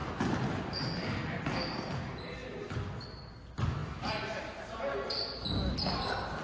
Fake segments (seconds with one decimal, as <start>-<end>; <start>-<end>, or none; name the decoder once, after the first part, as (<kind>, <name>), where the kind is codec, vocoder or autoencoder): none